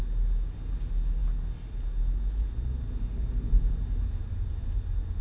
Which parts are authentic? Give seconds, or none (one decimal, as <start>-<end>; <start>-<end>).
0.0-5.2